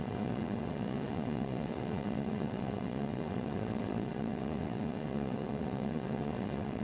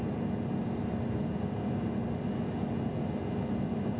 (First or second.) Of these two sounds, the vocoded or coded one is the first